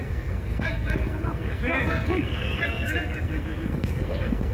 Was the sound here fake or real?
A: fake